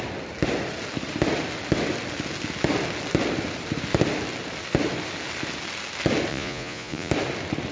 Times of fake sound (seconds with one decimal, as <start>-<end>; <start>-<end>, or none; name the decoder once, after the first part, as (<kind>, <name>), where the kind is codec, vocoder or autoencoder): 6.3-7.1 (vocoder, Vocos)